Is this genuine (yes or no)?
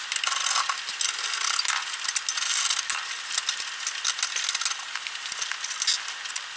yes